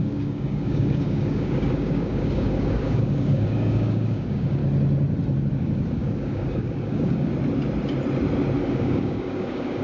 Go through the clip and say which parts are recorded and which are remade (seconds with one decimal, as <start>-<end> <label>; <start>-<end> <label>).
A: 0.0-4.6 remade; 4.6-5.5 recorded; 5.5-7.3 remade; 7.3-8.6 recorded; 8.6-9.8 remade